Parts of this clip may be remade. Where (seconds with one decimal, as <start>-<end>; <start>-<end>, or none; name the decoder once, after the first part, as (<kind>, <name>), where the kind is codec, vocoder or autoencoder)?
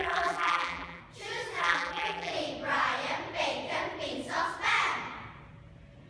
0.0-1.0 (vocoder, BigVGAN v2); 1.6-2.3